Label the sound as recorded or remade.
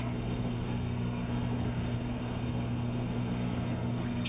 remade